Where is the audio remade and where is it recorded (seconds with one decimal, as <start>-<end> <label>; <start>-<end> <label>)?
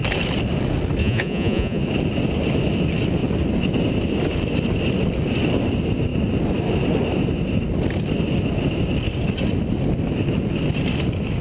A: 0.0-1.0 recorded; 1.0-1.8 remade; 1.8-11.4 recorded